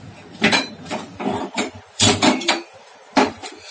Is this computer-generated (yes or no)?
yes